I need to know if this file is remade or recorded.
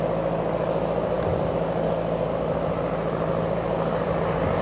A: recorded